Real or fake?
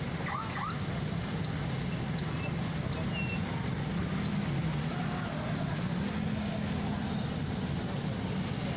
real